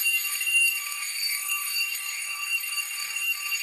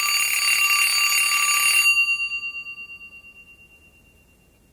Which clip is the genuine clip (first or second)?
second